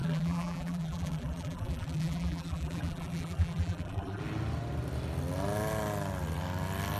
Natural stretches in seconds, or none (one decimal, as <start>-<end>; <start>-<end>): 4.2-7.0